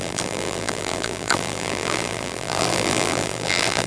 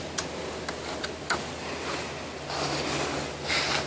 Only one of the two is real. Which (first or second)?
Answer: second